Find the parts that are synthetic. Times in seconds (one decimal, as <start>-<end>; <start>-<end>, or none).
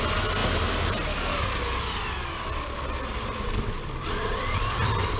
none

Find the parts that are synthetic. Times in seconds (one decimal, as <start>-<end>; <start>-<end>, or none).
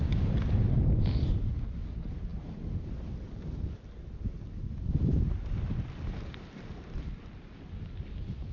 none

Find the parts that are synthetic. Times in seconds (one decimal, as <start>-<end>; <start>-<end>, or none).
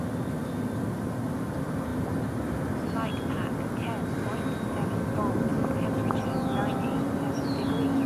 1.9-2.4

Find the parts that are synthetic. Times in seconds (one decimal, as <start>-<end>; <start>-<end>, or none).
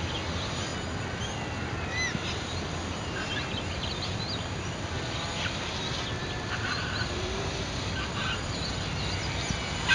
0.0-0.7; 4.2-9.9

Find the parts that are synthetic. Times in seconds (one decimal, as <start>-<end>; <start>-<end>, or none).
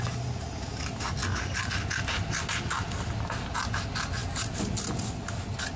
none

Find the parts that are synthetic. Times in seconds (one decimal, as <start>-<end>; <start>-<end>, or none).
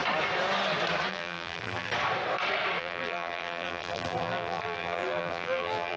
1.1-1.9; 2.8-6.0